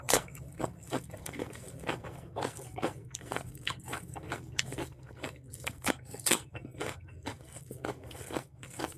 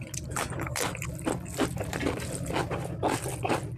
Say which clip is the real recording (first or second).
second